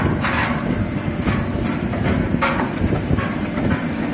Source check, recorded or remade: remade